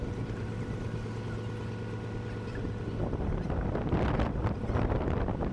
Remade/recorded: remade